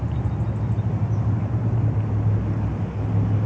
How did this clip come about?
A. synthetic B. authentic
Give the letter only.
B